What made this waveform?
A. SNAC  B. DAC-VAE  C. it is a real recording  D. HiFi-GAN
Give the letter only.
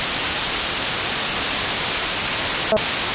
C